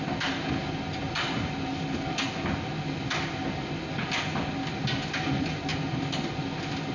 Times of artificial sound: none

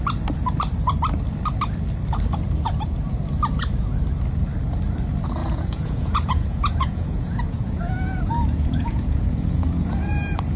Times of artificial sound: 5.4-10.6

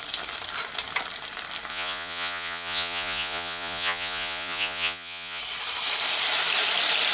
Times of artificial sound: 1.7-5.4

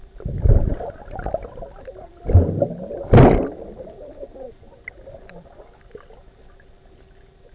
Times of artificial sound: none

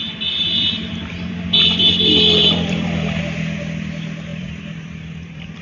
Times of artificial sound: 0.0-3.2; 4.3-5.6

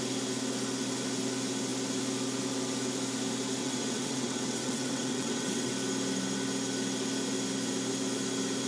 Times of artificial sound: 3.6-5.7